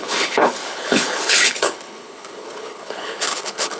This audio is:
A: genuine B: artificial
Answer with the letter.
B